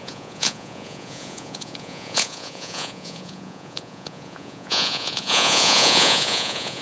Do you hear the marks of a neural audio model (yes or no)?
yes